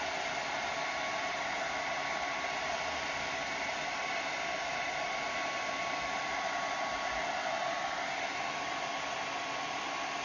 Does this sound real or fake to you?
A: real